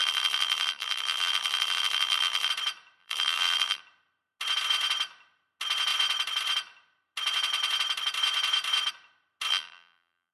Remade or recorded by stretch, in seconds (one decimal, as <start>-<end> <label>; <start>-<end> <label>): 0.0-2.5 remade; 2.5-3.0 recorded; 3.0-3.8 remade; 3.8-9.5 recorded; 9.5-10.3 remade